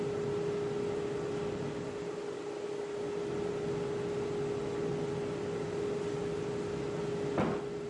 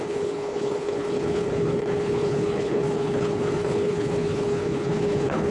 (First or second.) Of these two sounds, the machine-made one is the second